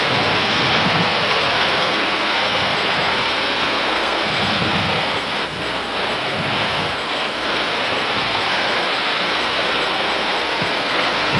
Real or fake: fake